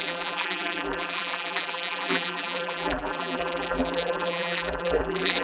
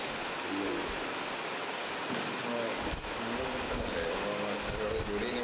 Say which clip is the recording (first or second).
second